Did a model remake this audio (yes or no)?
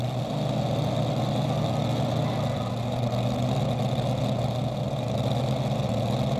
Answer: no